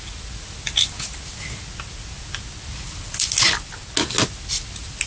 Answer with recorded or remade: recorded